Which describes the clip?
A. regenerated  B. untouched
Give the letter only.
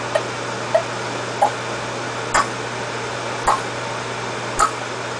B